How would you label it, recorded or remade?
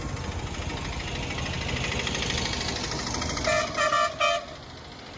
recorded